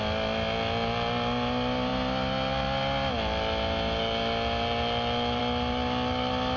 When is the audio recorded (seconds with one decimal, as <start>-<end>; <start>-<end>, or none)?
0.0-6.6